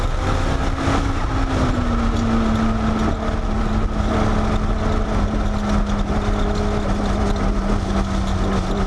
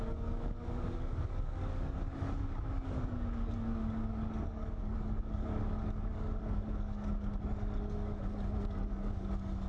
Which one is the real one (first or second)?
first